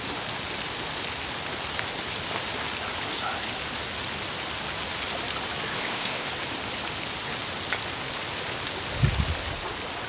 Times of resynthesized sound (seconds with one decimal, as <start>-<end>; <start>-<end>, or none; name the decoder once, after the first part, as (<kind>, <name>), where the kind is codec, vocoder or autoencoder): 5.7-6.3 (codec, ZipCodec)

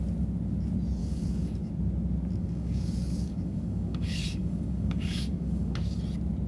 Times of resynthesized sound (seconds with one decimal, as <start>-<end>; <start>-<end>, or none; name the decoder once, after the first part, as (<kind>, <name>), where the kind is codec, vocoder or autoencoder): 1.0-1.7 (codec, DAC); 2.4-6.0

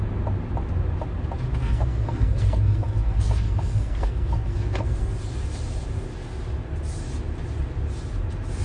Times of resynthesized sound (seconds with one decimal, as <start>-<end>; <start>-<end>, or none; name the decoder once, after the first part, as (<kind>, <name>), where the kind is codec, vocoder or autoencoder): 1.6-5.1 (codec, SNAC)

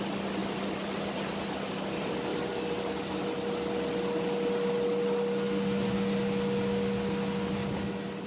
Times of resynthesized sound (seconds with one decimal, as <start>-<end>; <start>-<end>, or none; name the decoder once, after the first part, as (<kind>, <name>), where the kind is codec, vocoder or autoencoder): none

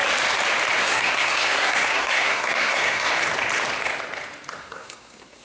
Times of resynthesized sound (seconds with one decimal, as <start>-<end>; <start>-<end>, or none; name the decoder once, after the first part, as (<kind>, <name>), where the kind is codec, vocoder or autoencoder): 0.8-3.1 (codec, SNAC); 4.6-5.4